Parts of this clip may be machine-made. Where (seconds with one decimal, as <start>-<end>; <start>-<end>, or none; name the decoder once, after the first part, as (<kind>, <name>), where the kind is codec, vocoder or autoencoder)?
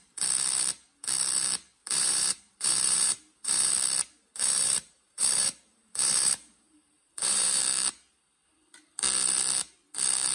1.8-3.7 (vocoder, BigVGAN v2); 4.4-7.6